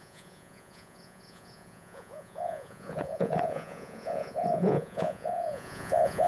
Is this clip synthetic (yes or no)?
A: yes